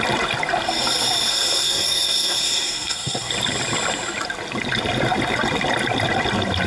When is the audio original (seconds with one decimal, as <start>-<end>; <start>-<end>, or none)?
0.0-1.3; 3.3-6.7